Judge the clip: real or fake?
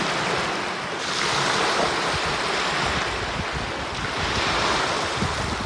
real